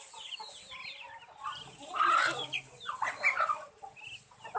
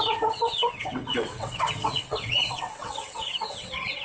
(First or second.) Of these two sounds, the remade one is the second